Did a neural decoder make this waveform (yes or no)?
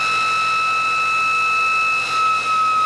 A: no